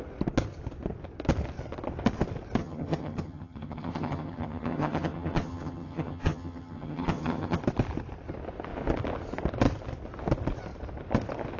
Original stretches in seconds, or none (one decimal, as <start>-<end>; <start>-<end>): 0.0-2.6; 7.6-11.6